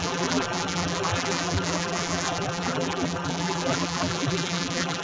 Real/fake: fake